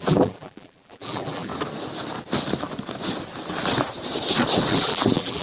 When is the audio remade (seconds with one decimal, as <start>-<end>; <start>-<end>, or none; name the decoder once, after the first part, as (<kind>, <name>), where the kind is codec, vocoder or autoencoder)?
0.0-1.5 (vocoder, BigVGAN v2); 4.7-5.4

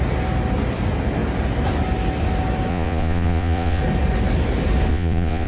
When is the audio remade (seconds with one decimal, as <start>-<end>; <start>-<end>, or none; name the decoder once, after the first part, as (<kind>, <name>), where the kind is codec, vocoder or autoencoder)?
2.7-3.8 (vocoder, Vocos); 4.9-5.5

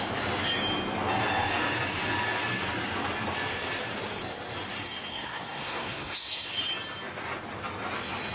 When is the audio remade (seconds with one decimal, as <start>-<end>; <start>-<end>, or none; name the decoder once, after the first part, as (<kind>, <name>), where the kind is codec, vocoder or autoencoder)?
5.1-6.5 (codec, SNAC)

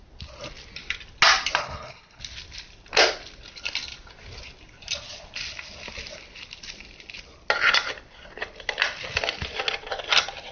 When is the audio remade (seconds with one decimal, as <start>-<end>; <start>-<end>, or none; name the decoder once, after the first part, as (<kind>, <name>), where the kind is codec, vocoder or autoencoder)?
1.6-2.2 (codec, HILCodec)

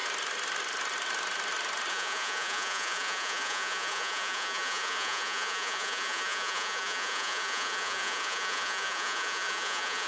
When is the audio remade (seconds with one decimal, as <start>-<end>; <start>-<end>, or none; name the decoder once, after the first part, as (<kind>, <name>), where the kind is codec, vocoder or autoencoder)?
1.9-10.1 (vocoder, Vocos)

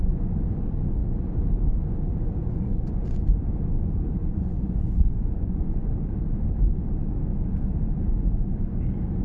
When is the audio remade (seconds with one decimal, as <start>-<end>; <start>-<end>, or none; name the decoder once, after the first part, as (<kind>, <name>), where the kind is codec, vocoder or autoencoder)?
2.4-3.3 (vocoder, Vocos); 4.2-5.9